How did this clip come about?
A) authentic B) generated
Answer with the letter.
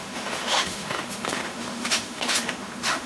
B